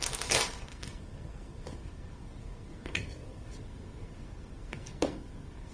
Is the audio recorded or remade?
remade